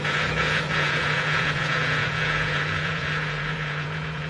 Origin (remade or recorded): remade